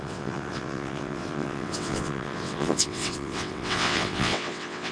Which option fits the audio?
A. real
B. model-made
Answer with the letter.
B